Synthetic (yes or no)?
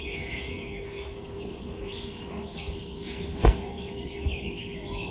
yes